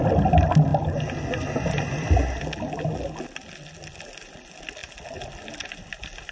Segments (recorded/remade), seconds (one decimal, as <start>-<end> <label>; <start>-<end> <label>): 0.0-6.3 recorded